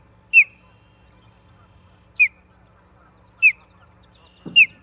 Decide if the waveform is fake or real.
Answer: real